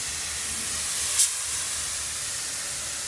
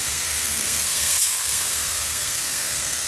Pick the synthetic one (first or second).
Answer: second